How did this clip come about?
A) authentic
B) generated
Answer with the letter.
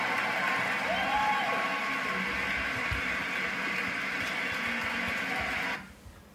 A